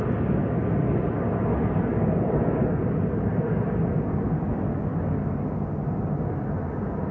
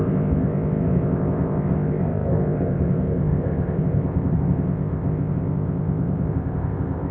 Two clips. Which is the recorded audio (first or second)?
first